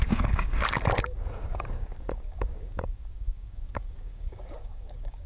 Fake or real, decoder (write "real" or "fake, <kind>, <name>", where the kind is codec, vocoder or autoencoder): fake, codec, DAC